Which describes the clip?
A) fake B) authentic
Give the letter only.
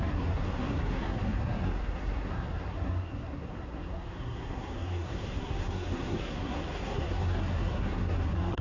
A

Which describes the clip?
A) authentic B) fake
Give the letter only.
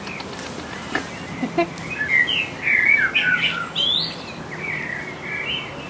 A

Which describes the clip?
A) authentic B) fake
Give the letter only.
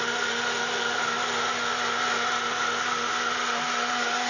A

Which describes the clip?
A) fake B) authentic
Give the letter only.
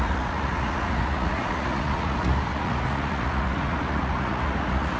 A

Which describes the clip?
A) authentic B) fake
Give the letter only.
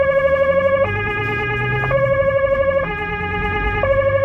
A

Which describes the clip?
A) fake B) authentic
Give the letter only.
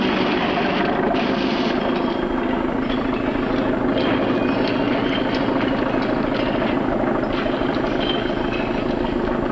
B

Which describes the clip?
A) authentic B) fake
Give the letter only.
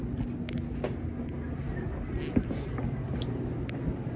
A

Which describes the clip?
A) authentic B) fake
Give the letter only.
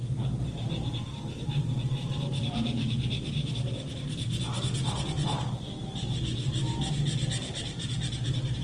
A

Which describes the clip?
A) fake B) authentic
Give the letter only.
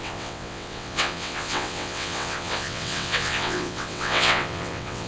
A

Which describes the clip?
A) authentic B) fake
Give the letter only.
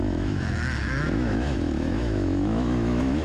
B